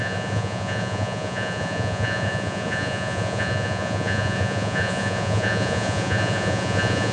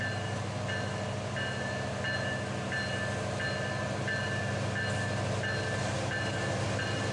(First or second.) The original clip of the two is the second